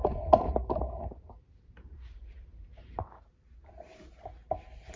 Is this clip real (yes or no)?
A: no